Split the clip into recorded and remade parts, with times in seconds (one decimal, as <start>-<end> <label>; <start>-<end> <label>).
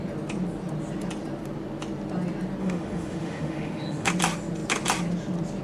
0.0-2.6 recorded; 2.6-4.1 remade; 4.1-5.6 recorded